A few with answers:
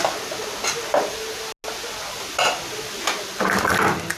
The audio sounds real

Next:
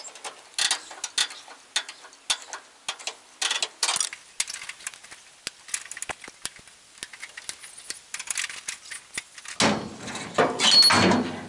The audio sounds real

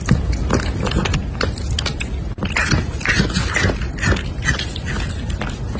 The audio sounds real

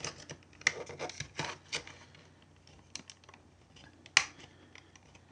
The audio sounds real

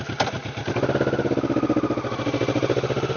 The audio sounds real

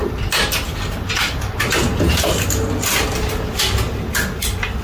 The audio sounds real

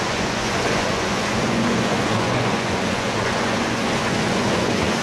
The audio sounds fake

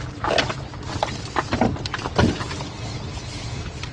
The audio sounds real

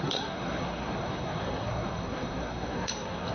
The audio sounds fake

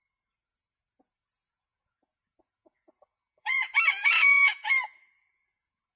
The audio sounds fake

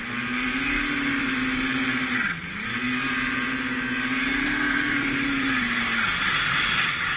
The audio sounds fake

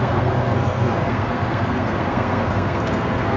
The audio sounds fake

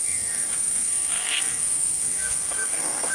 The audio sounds fake